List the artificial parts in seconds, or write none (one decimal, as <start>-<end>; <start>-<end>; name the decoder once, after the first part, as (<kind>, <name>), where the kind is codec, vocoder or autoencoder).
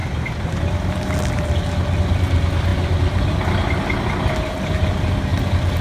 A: 0.0-0.6 (vocoder, BigVGAN v2)